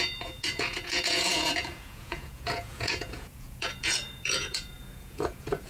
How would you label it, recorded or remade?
remade